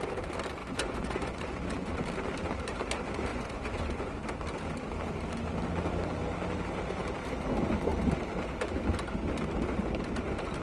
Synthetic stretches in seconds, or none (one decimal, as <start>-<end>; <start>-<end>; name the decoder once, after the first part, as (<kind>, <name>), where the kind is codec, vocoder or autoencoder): 0.6-1.9 (vocoder, Vocos); 3.3-4.1